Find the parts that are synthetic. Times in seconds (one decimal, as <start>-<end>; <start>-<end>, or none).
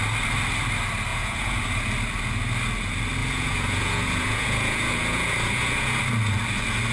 1.1-1.6; 3.2-6.0